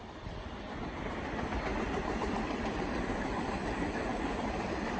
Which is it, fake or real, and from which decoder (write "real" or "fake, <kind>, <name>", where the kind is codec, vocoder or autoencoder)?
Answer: fake, vocoder, BigVGAN v2